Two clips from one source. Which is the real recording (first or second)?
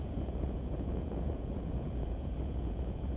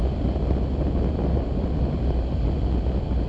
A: second